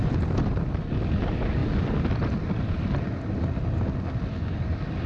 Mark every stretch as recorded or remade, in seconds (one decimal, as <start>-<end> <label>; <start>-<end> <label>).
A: 0.0-5.1 recorded